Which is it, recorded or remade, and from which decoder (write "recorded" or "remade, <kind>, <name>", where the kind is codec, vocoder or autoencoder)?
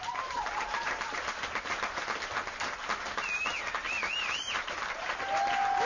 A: recorded